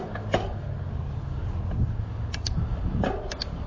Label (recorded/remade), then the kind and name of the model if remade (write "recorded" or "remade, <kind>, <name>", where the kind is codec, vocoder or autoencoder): recorded